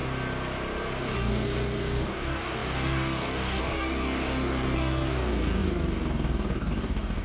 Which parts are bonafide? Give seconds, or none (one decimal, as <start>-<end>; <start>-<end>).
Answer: 0.0-1.0